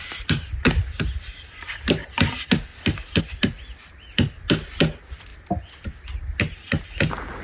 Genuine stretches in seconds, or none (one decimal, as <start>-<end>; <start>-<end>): 0.0-7.4